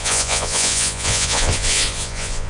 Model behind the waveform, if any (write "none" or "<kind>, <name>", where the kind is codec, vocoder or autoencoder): vocoder, Vocos